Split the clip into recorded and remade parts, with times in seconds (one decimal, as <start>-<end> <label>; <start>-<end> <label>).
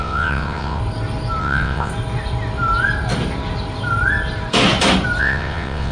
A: 0.0-0.8 remade; 0.8-1.4 recorded; 1.4-1.9 remade; 1.9-5.2 recorded; 5.2-5.9 remade